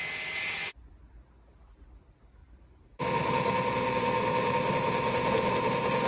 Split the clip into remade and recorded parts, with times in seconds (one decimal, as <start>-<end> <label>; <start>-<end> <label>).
0.0-2.4 recorded; 2.4-6.1 remade